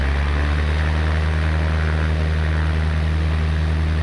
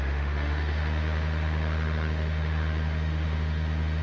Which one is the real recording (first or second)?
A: first